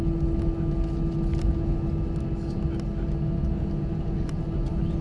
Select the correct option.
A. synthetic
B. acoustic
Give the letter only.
B